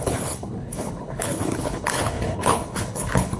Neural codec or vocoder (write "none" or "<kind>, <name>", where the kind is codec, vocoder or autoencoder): codec, HILCodec